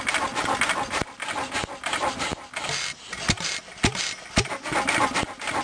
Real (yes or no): yes